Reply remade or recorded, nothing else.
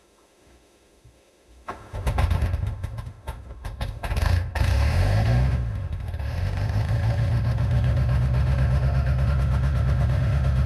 remade